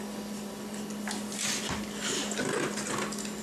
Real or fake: real